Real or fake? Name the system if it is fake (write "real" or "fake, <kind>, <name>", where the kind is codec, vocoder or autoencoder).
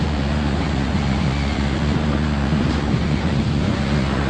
fake, vocoder, Vocos